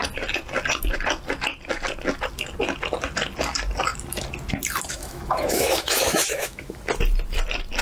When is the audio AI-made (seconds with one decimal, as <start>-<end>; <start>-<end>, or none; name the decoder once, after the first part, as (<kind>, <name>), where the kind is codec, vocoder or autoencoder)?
4.9-6.8 (autoencoder, DAC-VAE)